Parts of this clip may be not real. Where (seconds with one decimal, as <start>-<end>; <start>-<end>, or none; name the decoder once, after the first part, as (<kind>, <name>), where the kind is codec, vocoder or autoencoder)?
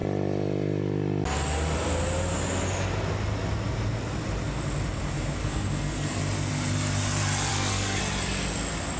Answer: 5.4-6.2 (codec, SNAC); 7.5-8.0